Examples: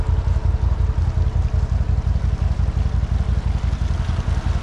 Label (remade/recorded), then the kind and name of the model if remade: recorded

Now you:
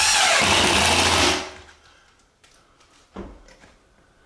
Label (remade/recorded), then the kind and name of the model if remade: recorded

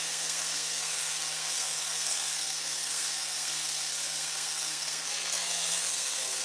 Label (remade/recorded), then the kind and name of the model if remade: remade, codec, SNAC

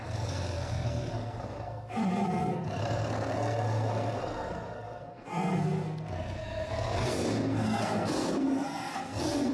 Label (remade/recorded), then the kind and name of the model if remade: remade, codec, SNAC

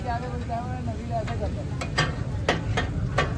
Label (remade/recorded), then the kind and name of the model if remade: recorded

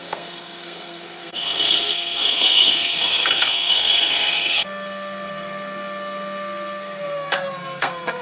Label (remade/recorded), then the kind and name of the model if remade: remade, codec, SNAC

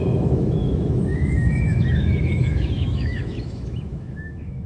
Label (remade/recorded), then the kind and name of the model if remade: remade, autoencoder, DAC-VAE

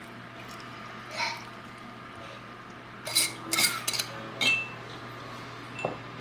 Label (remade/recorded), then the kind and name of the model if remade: recorded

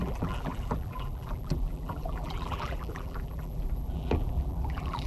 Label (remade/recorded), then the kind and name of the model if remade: remade, vocoder, BigVGAN v2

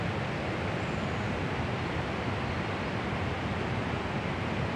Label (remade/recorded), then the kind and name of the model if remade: recorded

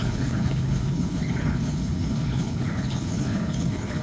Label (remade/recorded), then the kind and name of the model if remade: remade, codec, HILCodec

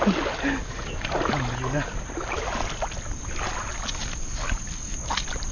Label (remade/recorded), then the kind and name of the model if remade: recorded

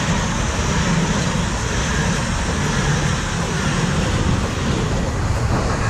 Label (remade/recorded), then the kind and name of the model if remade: recorded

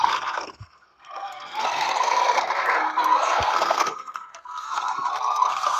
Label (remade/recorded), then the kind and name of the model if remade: remade, codec, SNAC